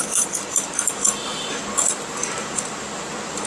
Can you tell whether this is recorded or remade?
recorded